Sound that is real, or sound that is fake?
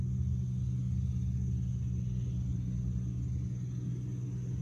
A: real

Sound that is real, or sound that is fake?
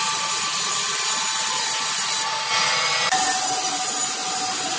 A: real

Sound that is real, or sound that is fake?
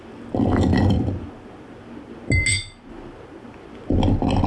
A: real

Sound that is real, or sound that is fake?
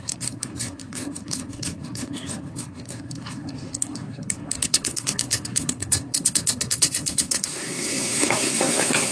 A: fake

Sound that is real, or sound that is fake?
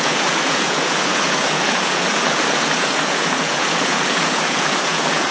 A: fake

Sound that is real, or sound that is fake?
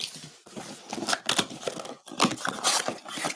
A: real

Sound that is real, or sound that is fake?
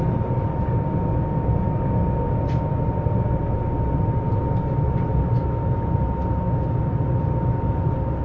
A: real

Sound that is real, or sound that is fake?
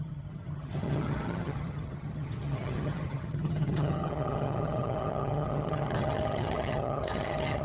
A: fake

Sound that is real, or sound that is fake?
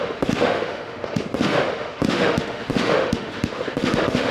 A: fake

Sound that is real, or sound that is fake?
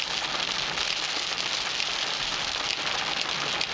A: real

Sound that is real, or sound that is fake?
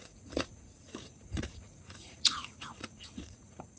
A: fake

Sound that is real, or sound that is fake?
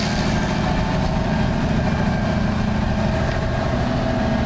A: real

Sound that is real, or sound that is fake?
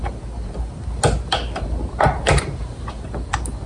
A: real